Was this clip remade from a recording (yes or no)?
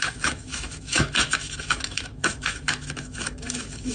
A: yes